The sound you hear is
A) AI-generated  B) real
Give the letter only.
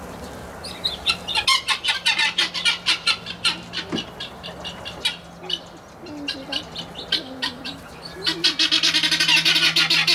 B